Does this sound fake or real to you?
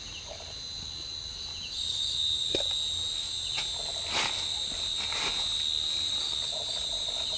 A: real